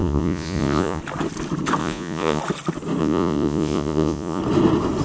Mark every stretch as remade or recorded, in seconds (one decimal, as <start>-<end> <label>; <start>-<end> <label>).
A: 0.0-1.0 remade; 1.0-1.8 recorded; 1.8-2.4 remade; 2.4-3.0 recorded; 3.0-4.4 remade; 4.4-5.0 recorded